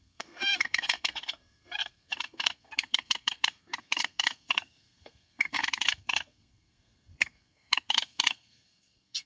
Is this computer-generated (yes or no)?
yes